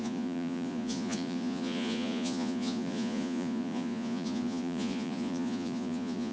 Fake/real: fake